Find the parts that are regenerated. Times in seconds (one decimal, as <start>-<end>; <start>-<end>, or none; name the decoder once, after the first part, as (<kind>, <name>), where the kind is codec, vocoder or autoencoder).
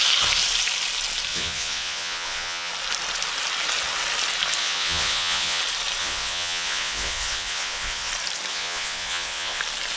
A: 1.3-2.7 (vocoder, Vocos); 4.6-5.6; 6.0-8.1; 8.5-9.6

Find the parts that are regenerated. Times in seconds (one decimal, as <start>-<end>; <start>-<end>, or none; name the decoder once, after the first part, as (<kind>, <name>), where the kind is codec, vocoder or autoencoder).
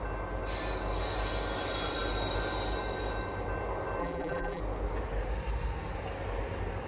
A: 4.0-4.6 (vocoder, BigVGAN v2)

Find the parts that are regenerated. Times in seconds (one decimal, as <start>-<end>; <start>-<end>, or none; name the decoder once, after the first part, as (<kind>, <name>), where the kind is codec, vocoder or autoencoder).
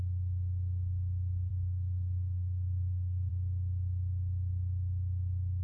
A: 1.5-3.3 (codec, SNAC)